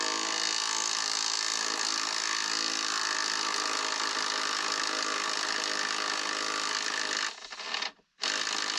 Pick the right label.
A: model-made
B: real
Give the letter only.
B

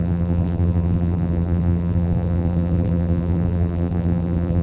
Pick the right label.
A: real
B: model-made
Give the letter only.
B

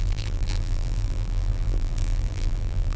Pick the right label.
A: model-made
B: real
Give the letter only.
A